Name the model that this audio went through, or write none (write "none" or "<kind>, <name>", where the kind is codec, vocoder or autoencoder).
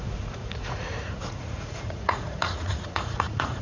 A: vocoder, Vocos